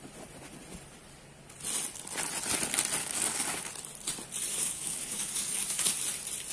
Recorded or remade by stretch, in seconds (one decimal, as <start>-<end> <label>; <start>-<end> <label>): 0.0-3.0 recorded; 3.0-3.7 remade; 3.7-4.5 recorded; 4.5-5.9 remade; 5.9-6.5 recorded